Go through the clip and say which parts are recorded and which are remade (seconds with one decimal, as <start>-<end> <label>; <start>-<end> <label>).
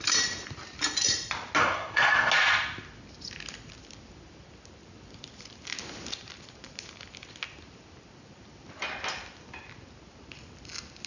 0.0-1.6 recorded; 1.6-2.3 remade; 2.3-11.1 recorded